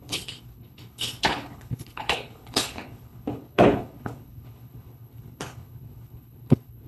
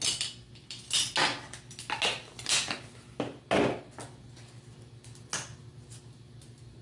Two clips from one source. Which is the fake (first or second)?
first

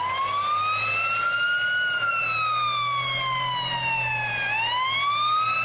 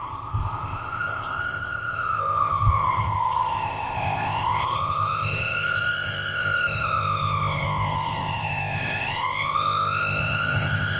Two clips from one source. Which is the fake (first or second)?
second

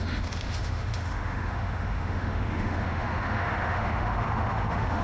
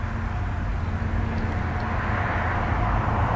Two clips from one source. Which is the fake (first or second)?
first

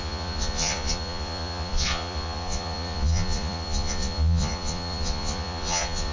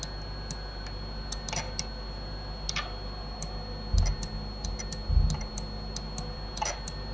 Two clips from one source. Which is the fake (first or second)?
first